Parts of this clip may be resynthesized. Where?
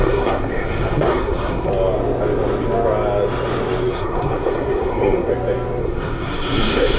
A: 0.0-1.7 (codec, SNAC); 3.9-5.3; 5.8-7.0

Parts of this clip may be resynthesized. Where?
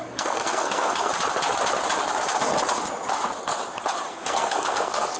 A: 0.0-1.1 (codec, SNAC); 4.1-5.2